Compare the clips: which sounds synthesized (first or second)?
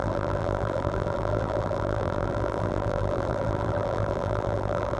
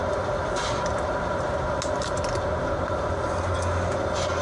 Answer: first